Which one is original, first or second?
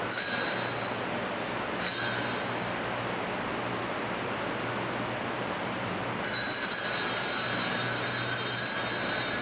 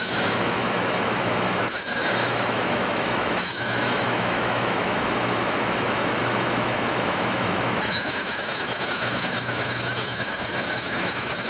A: first